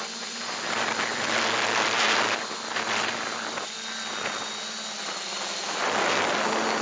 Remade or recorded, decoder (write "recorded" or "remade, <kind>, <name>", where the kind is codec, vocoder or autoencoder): recorded